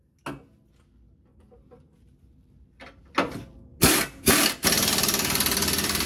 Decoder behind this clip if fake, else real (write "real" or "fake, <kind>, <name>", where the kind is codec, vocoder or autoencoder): real